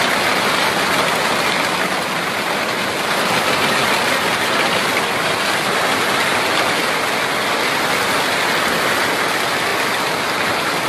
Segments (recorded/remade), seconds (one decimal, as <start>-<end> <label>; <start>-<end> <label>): 0.0-10.9 recorded